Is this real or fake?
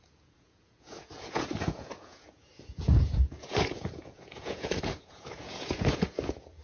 fake